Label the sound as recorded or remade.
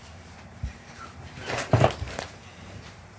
remade